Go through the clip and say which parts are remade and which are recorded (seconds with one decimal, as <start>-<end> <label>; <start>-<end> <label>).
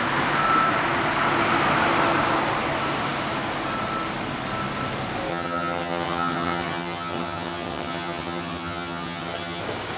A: 0.0-5.3 recorded; 5.3-9.6 remade; 9.6-10.0 recorded